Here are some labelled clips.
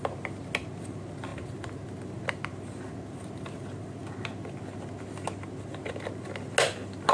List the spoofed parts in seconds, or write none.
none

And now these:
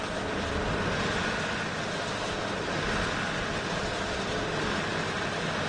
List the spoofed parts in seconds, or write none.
none

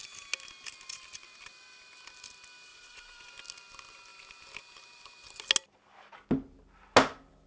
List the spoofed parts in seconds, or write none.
2.7-3.3 (vocoder, Vocos)

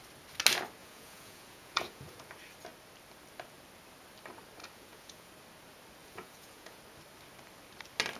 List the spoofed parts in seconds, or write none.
0.8-2.2 (vocoder, Vocos); 4.6-5.3; 6.0-6.8

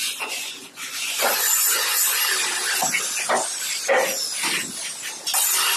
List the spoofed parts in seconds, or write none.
0.0-2.2 (vocoder, Vocos)

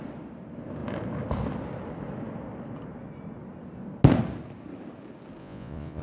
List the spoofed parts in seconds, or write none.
5.4-6.0 (vocoder, Vocos)

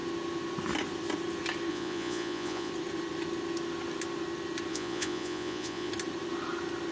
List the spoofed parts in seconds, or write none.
1.7-2.7 (vocoder, Vocos); 4.7-5.9